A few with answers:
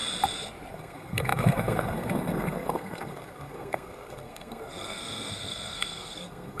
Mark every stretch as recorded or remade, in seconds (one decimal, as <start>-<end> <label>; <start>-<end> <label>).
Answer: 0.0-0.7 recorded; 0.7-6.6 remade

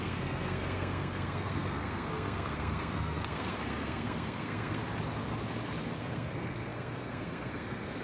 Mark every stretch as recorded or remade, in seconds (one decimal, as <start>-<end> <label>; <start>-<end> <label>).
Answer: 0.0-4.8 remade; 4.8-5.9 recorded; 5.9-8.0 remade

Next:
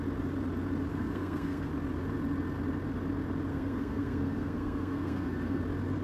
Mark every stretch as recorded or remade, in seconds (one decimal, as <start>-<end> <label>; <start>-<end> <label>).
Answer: 0.0-0.9 recorded; 0.9-1.7 remade; 1.7-3.5 recorded; 3.5-5.6 remade; 5.6-6.0 recorded

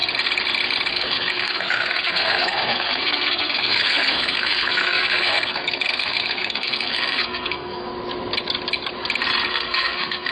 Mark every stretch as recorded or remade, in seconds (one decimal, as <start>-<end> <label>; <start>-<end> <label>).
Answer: 0.0-0.9 recorded; 0.9-7.9 remade; 7.9-9.5 recorded; 9.5-10.3 remade